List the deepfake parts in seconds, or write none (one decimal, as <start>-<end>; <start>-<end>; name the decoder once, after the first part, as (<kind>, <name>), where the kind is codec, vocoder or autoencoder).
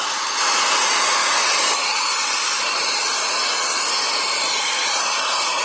none